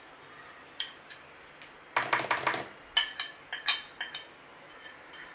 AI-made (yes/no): no